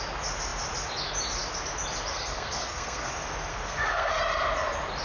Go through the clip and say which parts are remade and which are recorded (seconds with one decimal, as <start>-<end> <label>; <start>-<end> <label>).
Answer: 0.0-2.1 recorded; 2.1-3.1 remade; 3.1-3.5 recorded; 3.5-4.2 remade; 4.2-5.0 recorded